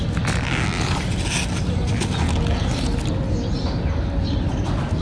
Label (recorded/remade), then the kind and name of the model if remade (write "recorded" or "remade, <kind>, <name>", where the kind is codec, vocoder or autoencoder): recorded